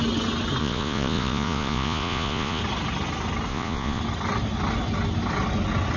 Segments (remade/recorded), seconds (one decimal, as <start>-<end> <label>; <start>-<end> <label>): 0.0-0.6 recorded; 0.6-2.6 remade; 2.6-3.5 recorded; 3.5-4.0 remade; 4.0-6.0 recorded